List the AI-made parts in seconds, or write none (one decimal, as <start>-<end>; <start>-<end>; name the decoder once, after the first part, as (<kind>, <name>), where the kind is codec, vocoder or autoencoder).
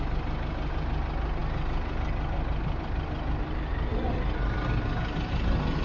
none